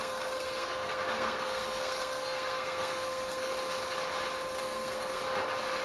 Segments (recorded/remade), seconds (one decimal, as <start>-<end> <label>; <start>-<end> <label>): 0.0-3.5 remade; 3.5-4.6 recorded; 4.6-5.2 remade; 5.2-5.8 recorded